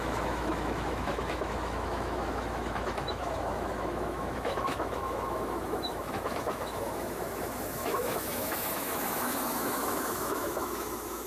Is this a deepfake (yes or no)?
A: yes